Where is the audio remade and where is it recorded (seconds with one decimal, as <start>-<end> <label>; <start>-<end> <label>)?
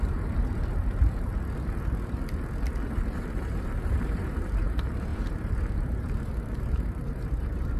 0.0-1.3 remade; 1.3-2.9 recorded; 2.9-7.8 remade